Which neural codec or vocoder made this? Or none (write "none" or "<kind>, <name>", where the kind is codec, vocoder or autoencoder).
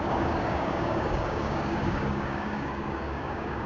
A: codec, DAC